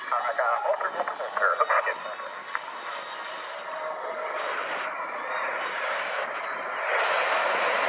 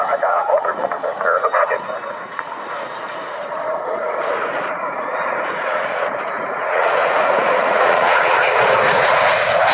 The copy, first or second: second